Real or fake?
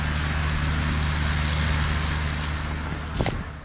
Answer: real